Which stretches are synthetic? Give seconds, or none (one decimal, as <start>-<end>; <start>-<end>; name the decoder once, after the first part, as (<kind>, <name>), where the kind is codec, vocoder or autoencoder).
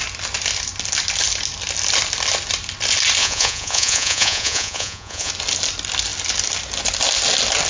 3.2-5.3 (vocoder, Vocos)